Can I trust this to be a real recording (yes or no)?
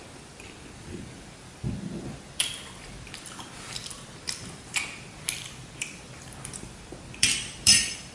no